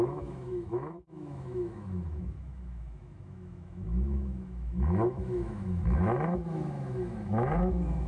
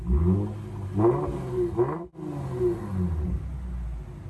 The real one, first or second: second